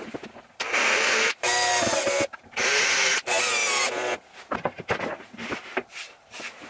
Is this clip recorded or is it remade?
recorded